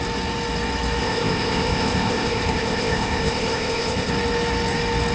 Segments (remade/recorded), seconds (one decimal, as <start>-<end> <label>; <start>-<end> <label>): 0.0-1.0 recorded; 1.0-4.1 remade; 4.1-5.1 recorded